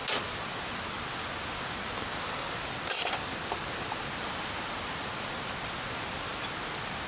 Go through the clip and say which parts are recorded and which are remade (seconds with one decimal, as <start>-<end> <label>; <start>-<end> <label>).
0.0-7.1 recorded